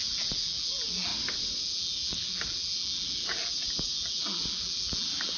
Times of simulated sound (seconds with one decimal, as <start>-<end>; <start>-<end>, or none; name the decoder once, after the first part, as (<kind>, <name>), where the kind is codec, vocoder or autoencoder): 0.0-1.1 (vocoder, BigVGAN v2); 1.6-5.4